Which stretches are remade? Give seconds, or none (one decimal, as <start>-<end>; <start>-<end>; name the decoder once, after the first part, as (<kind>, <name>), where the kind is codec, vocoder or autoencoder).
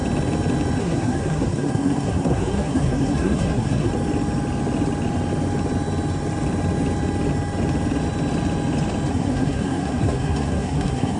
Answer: 0.8-3.9 (codec, SNAC); 9.1-11.2